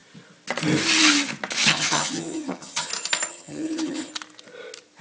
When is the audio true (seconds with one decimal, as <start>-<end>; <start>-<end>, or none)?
0.0-1.7; 2.9-3.3; 4.1-5.0